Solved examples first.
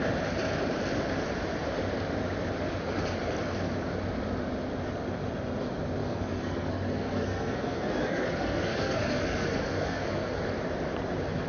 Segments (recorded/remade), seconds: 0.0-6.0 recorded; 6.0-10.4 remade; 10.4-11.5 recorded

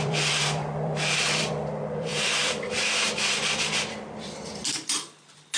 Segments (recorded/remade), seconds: 0.0-5.6 remade

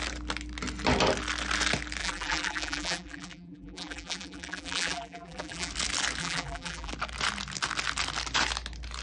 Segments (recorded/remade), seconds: 0.0-2.0 recorded; 2.0-5.7 remade; 5.7-6.2 recorded; 6.2-6.9 remade; 6.9-9.0 recorded

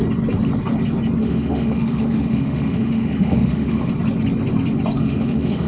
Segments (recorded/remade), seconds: 0.0-1.2 recorded; 1.2-3.9 remade; 3.9-5.0 recorded; 5.0-5.7 remade

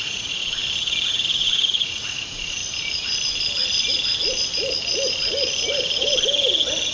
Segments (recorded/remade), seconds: 0.0-0.6 remade; 0.6-1.1 recorded; 1.1-2.6 remade; 2.6-6.9 recorded

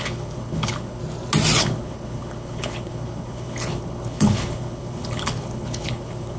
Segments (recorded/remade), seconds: 0.0-1.0 remade; 1.0-1.6 recorded; 1.6-6.4 remade

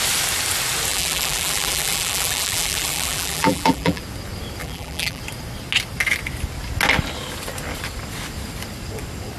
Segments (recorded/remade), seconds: 0.0-0.9 recorded; 0.9-4.0 remade; 4.0-4.6 recorded; 4.6-5.2 remade; 5.2-9.4 recorded